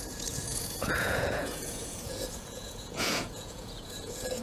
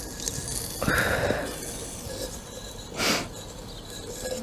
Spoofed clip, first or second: first